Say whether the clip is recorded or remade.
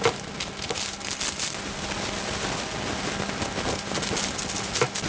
recorded